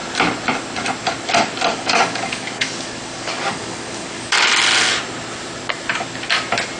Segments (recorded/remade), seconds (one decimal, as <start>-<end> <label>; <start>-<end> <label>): 0.0-1.7 recorded; 1.7-4.5 remade; 4.5-6.8 recorded